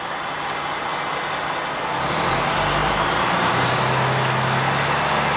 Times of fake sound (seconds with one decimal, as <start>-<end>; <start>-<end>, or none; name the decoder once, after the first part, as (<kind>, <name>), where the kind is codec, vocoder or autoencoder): 2.8-3.8 (vocoder, BigVGAN v2)